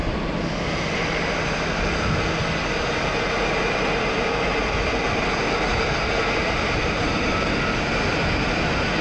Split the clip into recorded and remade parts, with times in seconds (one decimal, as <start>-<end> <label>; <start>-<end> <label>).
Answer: 0.0-6.4 recorded; 6.4-7.6 remade; 7.6-9.0 recorded